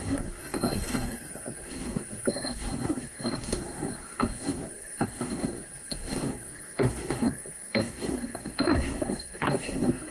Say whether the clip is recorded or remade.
remade